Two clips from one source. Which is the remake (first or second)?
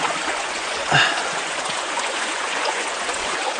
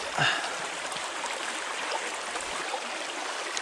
first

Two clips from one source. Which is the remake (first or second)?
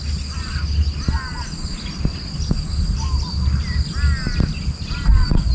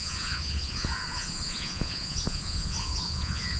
second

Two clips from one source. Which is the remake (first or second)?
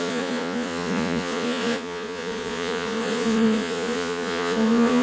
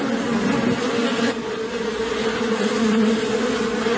first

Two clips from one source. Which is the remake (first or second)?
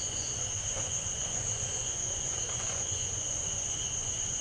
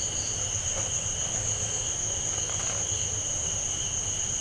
first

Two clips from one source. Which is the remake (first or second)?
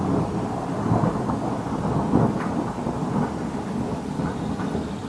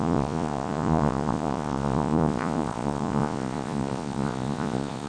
second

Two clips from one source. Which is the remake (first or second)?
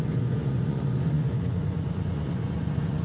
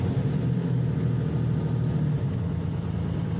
first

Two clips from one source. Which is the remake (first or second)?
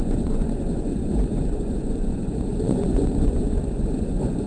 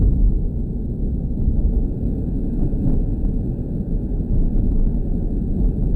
first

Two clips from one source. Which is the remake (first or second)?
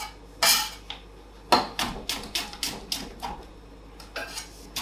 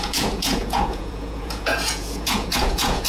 second